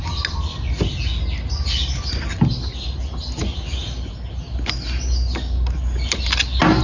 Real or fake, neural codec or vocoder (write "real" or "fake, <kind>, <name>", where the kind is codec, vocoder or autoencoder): real